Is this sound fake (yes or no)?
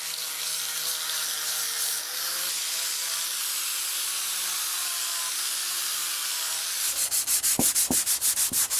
no